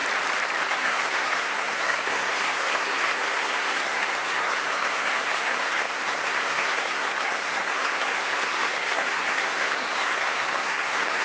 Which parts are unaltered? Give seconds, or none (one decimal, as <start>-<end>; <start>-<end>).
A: 0.0-0.7